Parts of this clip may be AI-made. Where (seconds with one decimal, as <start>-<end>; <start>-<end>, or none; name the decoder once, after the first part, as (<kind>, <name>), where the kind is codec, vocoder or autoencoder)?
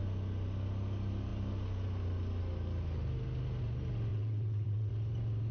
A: 4.1-4.9 (vocoder, WaveNeXt)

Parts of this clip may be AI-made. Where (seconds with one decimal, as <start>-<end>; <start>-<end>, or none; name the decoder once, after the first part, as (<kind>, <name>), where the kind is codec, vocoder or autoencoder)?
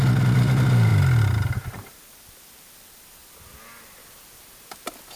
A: none